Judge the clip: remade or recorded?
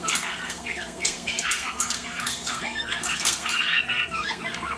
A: remade